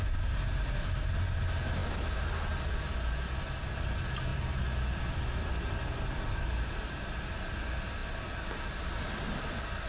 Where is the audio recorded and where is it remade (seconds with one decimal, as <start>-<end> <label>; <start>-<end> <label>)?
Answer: 0.0-9.9 recorded

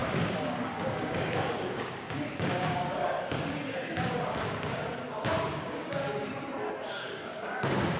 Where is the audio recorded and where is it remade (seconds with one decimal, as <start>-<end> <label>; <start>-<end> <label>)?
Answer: 0.0-6.0 remade; 6.0-6.7 recorded; 6.7-8.0 remade

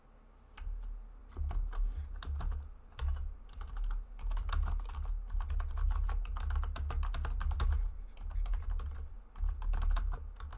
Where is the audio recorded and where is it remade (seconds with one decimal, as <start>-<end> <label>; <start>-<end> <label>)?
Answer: 0.0-10.6 recorded

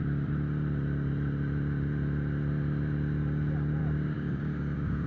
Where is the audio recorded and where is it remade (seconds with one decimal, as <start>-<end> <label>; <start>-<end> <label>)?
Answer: 0.0-3.8 recorded; 3.8-5.1 remade

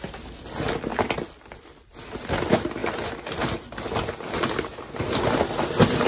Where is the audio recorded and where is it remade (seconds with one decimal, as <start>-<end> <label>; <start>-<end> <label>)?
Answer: 0.0-6.1 recorded

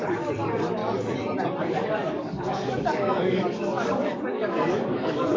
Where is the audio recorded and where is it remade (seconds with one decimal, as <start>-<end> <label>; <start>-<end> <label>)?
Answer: 0.0-0.8 remade; 0.8-1.6 recorded; 1.6-5.4 remade

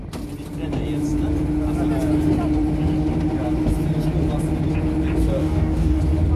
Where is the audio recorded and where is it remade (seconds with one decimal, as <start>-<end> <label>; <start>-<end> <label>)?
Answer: 0.0-5.4 recorded; 5.4-6.0 remade; 6.0-6.4 recorded

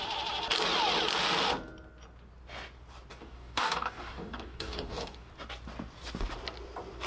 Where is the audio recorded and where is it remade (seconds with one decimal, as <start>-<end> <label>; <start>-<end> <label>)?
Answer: 0.0-3.1 recorded; 3.1-5.3 remade; 5.3-7.1 recorded